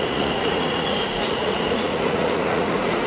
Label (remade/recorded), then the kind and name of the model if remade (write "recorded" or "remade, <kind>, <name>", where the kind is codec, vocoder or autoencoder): remade, vocoder, Vocos